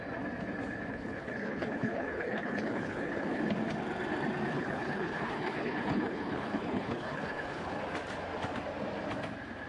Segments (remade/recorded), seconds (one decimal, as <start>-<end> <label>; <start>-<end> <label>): 0.0-0.9 recorded; 0.9-3.4 remade; 3.4-4.5 recorded; 4.5-7.8 remade; 7.8-9.7 recorded